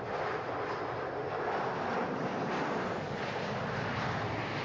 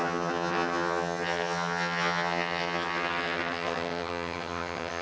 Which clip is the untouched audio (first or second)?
first